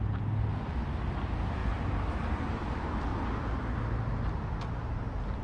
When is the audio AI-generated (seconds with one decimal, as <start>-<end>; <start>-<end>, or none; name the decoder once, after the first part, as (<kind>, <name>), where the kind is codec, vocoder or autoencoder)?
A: none